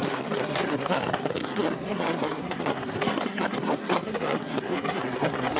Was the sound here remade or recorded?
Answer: remade